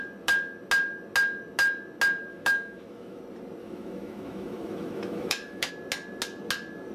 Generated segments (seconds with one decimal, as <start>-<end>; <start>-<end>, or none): 2.3-3.2; 3.6-5.7